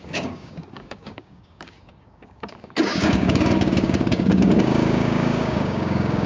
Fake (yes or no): yes